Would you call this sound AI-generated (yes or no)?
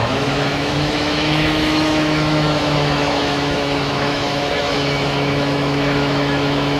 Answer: yes